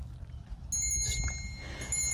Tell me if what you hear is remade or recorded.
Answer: recorded